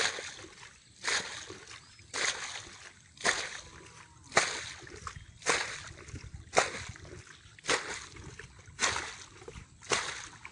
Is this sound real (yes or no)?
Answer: yes